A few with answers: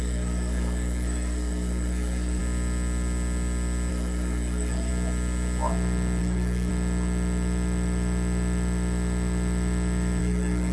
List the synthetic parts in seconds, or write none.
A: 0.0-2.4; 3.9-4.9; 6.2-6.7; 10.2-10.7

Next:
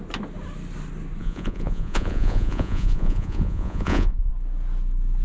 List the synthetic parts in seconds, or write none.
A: 1.2-4.3

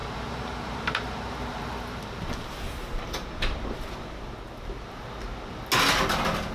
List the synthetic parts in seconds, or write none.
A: 0.0-3.9

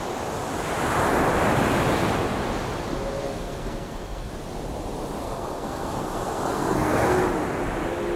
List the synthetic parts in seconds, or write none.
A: 3.2-4.3; 5.2-7.2

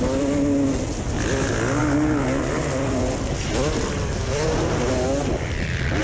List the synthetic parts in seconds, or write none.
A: none

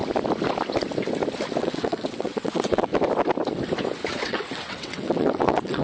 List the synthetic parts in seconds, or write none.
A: 1.6-2.9; 4.2-5.8

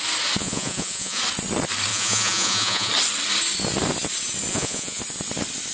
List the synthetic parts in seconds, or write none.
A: 0.4-1.2; 1.9-2.9; 4.5-5.0

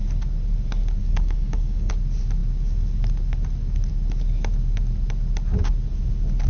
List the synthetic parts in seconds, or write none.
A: 1.0-1.9